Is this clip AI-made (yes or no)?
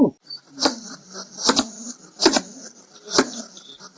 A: no